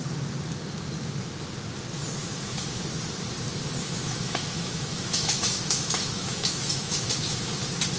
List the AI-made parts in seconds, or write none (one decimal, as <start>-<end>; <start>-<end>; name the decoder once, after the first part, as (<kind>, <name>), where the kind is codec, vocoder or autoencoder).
2.2-2.8 (autoencoder, DAC-VAE); 3.8-7.6